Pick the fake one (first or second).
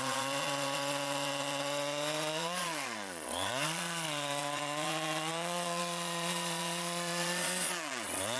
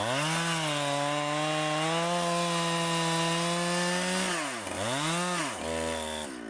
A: first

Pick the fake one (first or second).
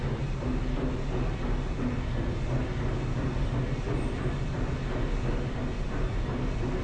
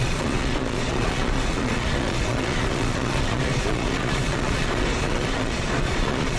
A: second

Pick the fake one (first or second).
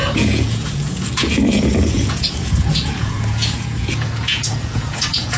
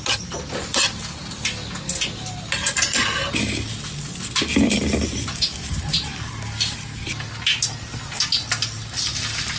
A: first